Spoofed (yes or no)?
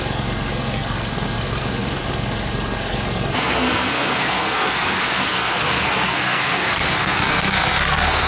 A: yes